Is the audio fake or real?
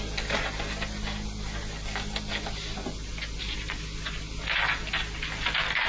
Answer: real